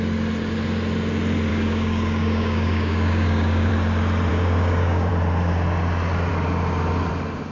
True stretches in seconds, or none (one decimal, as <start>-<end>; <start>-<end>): 0.0-1.5; 3.7-4.3; 5.1-7.5

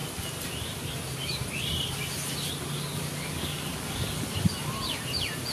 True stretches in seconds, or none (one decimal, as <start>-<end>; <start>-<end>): 0.0-3.3; 4.2-5.5

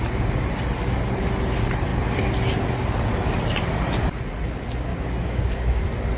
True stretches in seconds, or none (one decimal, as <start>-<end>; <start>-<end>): 0.0-4.9; 5.8-6.2

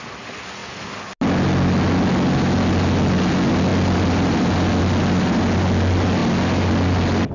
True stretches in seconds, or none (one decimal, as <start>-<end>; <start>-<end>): 0.0-7.3

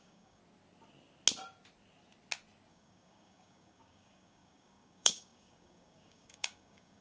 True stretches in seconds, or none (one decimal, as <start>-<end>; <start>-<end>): 0.4-2.7

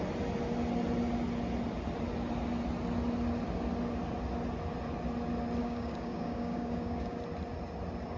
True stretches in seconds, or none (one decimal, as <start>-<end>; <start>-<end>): 0.0-5.6; 7.2-8.2

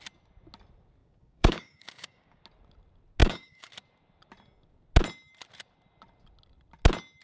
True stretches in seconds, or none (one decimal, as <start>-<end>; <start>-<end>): 0.0-1.0; 2.4-3.2; 3.7-7.2